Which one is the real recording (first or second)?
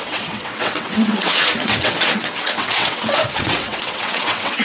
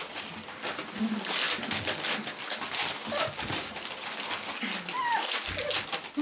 second